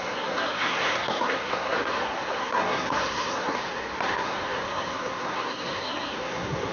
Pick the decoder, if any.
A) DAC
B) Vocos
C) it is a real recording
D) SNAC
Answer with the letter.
D